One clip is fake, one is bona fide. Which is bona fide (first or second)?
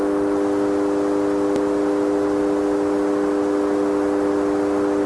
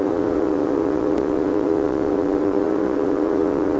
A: first